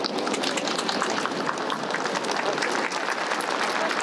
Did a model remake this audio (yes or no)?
no